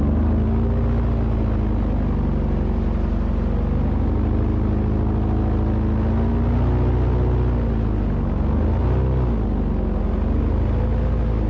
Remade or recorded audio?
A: recorded